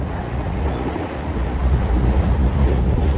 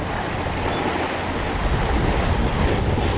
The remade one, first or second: first